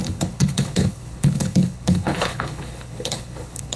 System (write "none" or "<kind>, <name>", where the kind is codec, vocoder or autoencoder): codec, HILCodec